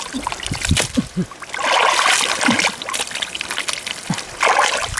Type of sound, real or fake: real